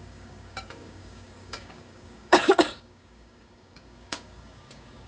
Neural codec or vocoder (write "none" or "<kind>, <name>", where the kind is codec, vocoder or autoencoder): codec, DAC